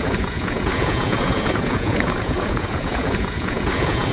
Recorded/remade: remade